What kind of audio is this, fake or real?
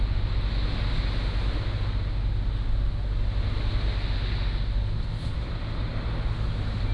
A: real